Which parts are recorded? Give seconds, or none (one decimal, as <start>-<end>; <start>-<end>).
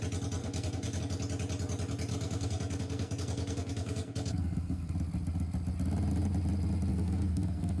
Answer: 0.0-0.4; 1.0-2.1; 4.9-6.9